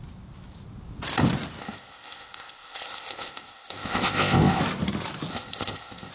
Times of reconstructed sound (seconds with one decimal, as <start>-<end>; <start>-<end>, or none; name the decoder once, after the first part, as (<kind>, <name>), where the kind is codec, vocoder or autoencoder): 1.6-4.6 (codec, ZipCodec); 5.3-6.1